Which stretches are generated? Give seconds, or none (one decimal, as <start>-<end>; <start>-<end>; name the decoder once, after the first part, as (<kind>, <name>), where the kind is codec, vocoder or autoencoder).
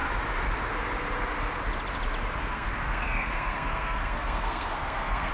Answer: 2.4-5.3 (codec, SNAC)